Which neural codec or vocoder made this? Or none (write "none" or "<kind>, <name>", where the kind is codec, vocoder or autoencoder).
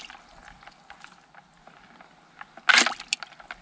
none